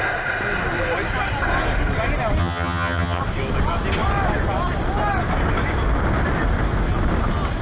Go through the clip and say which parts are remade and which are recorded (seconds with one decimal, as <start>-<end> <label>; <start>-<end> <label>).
0.0-2.4 recorded; 2.4-3.2 remade; 3.2-7.6 recorded